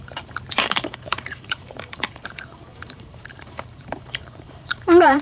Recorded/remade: remade